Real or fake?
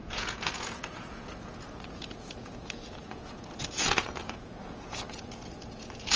fake